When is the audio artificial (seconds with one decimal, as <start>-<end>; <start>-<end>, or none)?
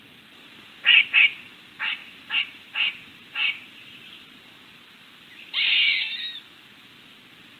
none